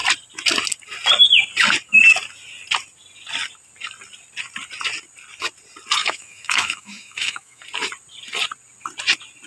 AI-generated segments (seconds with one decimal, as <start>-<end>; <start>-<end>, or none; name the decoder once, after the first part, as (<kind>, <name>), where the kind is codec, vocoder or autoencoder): 6.0-7.6 (autoencoder, DAC-VAE)